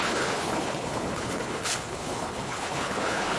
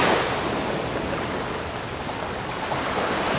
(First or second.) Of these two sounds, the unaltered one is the second